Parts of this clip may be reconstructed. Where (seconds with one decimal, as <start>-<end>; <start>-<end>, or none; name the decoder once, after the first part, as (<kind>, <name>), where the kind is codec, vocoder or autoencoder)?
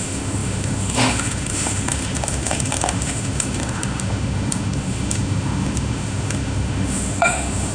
0.0-7.7 (autoencoder, DAC-VAE)